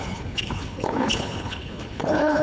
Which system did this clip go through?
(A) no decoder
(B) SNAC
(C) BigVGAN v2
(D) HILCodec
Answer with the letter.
D